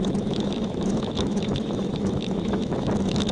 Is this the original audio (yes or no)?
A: no